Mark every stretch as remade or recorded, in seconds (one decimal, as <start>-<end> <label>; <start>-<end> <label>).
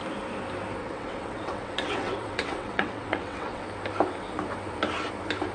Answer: 0.0-0.8 recorded; 0.8-3.6 remade; 3.6-5.5 recorded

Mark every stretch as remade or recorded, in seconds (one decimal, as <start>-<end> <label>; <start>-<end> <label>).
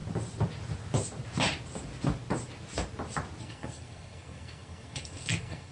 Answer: 0.0-3.4 recorded; 3.4-5.7 remade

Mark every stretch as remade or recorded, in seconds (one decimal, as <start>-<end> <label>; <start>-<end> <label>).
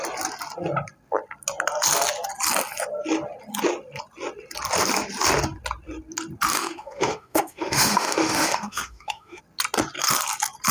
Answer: 0.0-6.5 recorded; 6.5-9.4 remade; 9.4-10.7 recorded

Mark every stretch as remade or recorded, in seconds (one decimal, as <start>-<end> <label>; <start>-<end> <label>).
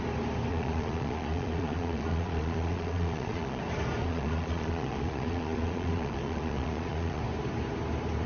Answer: 0.0-0.5 recorded; 0.5-3.6 remade; 3.6-4.0 recorded; 4.0-7.2 remade; 7.2-8.3 recorded